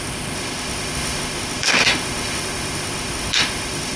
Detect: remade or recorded remade